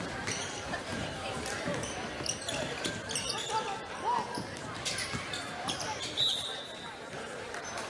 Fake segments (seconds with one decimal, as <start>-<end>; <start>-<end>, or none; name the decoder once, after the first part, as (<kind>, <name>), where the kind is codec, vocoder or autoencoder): 0.0-1.7 (vocoder, BigVGAN v2); 5.6-7.9